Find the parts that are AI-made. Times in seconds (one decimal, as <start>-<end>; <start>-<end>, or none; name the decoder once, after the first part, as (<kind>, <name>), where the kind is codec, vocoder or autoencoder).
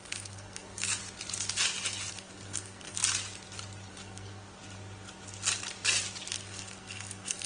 0.0-1.0 (codec, SNAC); 2.1-3.0; 3.9-4.6; 6.3-7.5